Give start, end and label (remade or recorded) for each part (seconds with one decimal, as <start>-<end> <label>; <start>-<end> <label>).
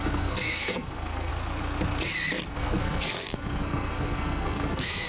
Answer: 0.0-1.3 remade; 1.3-2.5 recorded; 2.5-5.1 remade